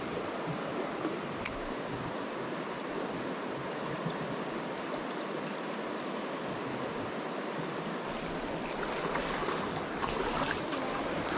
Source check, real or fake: real